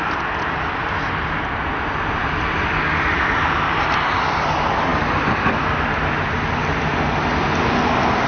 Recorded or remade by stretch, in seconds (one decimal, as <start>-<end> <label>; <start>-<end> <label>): 0.0-8.3 recorded